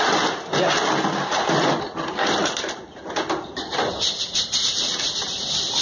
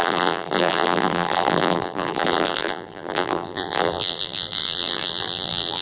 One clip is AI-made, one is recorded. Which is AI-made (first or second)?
second